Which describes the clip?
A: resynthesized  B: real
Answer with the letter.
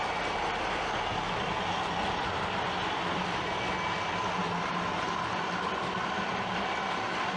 B